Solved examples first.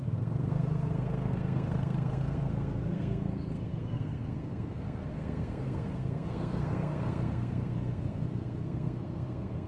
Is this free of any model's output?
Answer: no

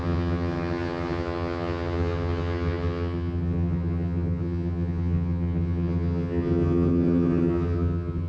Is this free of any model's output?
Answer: no